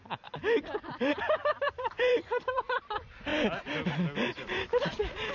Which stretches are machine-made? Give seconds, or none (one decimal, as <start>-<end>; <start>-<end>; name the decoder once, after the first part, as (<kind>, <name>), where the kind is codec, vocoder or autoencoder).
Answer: 0.0-3.3 (vocoder, BigVGAN v2); 4.2-5.3